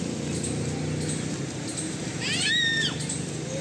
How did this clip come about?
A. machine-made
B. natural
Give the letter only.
B